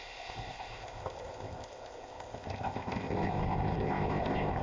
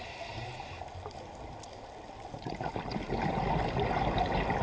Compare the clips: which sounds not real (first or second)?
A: first